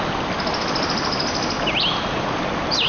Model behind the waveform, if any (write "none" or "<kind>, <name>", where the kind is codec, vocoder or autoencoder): none